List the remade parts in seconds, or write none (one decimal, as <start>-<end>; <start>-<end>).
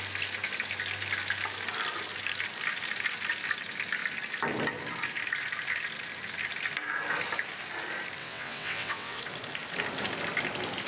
8.2-9.2